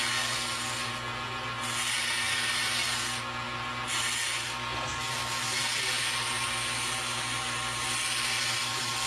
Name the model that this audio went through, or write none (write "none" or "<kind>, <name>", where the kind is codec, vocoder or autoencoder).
none